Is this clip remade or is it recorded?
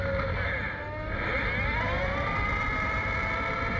recorded